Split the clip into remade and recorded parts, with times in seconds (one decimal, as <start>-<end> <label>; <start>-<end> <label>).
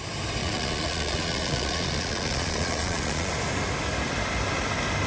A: 0.0-0.4 recorded; 0.4-3.3 remade; 3.3-5.1 recorded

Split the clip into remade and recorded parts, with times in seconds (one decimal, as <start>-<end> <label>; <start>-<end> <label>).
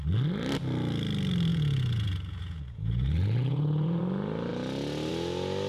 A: 0.0-1.5 recorded; 1.5-4.0 remade; 4.0-5.7 recorded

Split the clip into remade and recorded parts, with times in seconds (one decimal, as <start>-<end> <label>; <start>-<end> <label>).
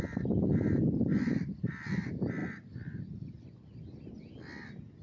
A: 0.0-5.0 recorded